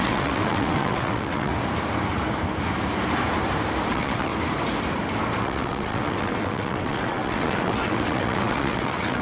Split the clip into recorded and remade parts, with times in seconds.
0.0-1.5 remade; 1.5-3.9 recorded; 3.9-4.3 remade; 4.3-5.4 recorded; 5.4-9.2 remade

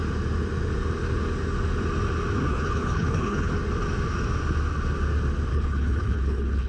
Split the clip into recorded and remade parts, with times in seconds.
0.0-2.5 recorded; 2.5-3.5 remade; 3.5-5.5 recorded; 5.5-6.7 remade

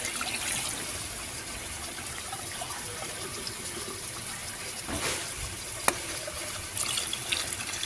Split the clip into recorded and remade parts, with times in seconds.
0.0-7.9 recorded

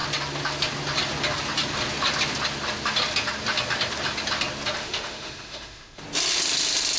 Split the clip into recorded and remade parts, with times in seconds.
0.0-4.8 recorded; 4.8-6.0 remade; 6.0-7.0 recorded

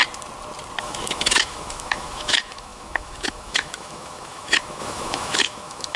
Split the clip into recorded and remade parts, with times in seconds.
0.0-0.8 recorded; 0.8-6.0 remade

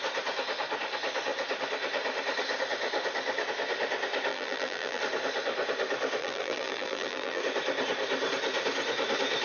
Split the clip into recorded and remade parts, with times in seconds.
0.0-4.3 recorded; 4.3-5.0 remade; 5.0-6.2 recorded; 6.2-7.4 remade; 7.4-9.4 recorded

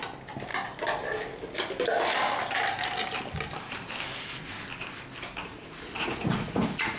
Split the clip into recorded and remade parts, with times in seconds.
0.0-5.4 recorded; 5.4-7.0 remade

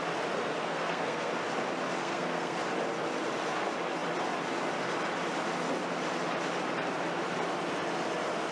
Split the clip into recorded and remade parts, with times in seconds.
0.0-0.5 recorded; 0.5-1.3 remade; 1.3-2.0 recorded; 2.0-2.6 remade; 2.6-8.5 recorded